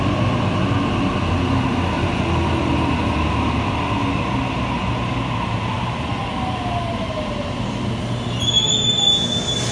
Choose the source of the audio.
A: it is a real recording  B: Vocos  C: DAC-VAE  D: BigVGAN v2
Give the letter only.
A